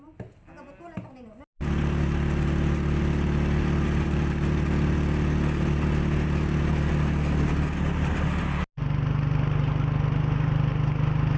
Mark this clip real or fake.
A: real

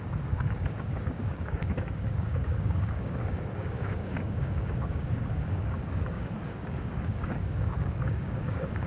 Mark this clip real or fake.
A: fake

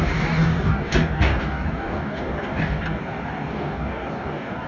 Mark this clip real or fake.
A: fake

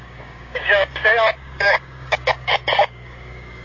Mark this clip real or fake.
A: fake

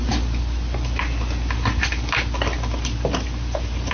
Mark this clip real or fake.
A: real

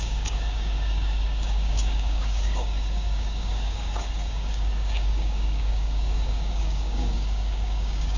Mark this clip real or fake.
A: fake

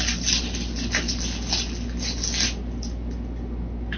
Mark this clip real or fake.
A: real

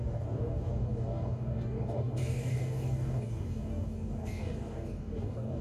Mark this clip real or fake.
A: fake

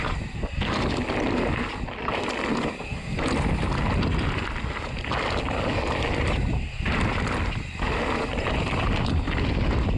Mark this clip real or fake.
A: real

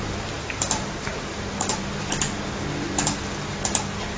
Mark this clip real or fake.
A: real